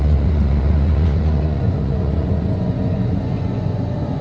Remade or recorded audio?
remade